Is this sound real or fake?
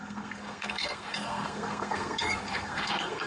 fake